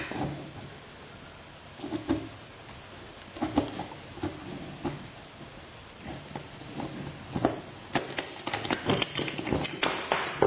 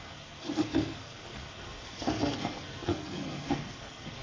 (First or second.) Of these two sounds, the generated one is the second